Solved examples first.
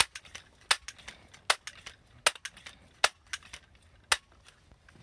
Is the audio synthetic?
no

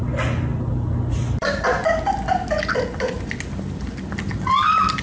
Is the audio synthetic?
no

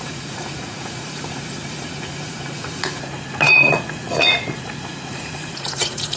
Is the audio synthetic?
yes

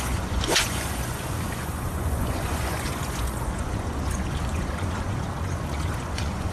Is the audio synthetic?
yes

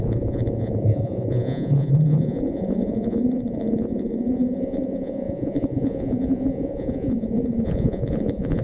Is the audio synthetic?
yes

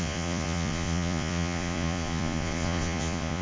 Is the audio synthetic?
yes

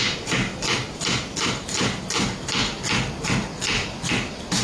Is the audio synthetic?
no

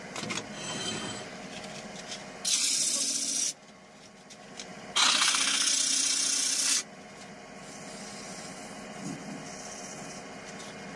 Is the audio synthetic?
no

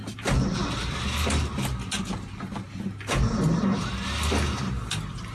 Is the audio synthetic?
no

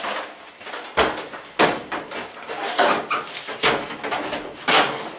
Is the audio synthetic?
no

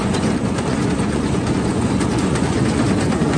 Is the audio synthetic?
yes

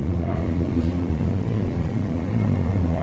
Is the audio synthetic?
yes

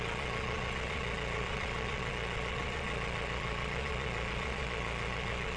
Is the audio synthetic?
yes